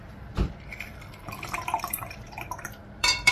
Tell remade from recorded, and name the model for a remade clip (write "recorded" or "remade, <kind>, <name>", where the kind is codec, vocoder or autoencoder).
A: remade, vocoder, BigVGAN v2